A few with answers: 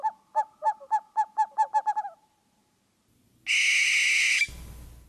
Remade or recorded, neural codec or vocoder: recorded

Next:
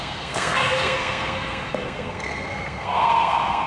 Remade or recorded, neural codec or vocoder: remade, codec, SNAC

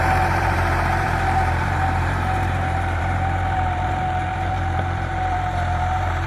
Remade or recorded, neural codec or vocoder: remade, vocoder, BigVGAN v2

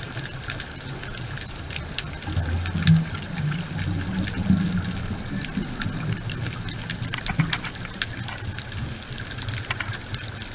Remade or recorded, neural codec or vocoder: recorded